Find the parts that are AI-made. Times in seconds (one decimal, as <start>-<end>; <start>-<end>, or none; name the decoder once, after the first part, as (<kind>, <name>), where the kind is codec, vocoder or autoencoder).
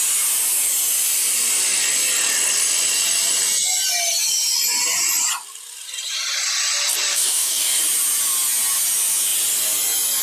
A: 7.1-7.8 (codec, DAC)